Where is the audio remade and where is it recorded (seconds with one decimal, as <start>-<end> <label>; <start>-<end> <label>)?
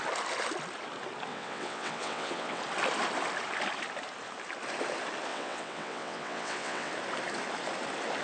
0.0-1.3 recorded; 1.3-2.6 remade; 2.6-5.3 recorded; 5.3-6.9 remade; 6.9-8.2 recorded